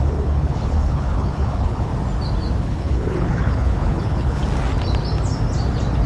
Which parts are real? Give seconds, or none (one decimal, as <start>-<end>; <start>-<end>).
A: 1.9-2.6; 4.4-6.1